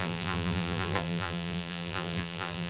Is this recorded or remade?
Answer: remade